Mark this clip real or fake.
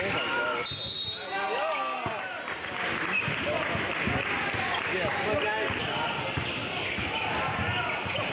real